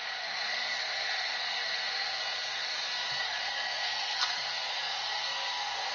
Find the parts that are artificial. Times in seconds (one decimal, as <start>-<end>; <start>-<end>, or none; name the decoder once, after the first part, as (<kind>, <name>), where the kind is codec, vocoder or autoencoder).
0.0-2.2 (codec, SNAC); 3.2-5.9